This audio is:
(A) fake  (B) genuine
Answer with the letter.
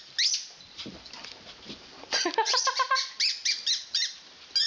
B